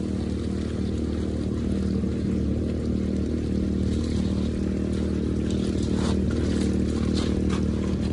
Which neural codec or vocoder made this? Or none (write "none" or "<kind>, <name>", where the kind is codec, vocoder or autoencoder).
none